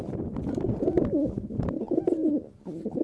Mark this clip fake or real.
real